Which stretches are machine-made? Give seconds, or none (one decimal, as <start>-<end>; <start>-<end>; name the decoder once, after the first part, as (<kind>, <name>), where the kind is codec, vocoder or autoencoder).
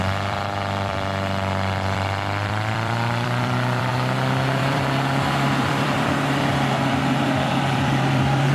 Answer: 0.0-3.9 (vocoder, BigVGAN v2); 4.6-8.5